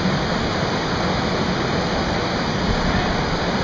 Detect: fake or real real